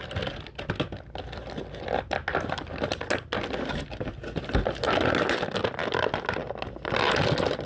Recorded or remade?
recorded